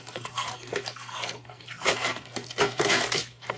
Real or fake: fake